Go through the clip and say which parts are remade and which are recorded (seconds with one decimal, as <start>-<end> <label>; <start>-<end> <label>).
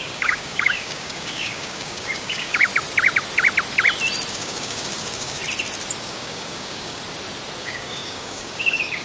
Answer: 0.0-2.7 remade; 2.7-4.3 recorded; 4.3-5.4 remade; 5.4-6.0 recorded; 6.0-7.0 remade; 7.0-7.6 recorded; 7.6-9.0 remade